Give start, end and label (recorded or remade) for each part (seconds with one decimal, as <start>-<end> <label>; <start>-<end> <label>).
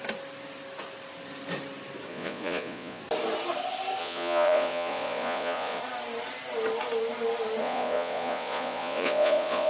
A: 0.0-2.1 recorded; 2.1-3.0 remade; 3.0-4.0 recorded; 4.0-5.8 remade; 5.8-7.6 recorded; 7.6-9.7 remade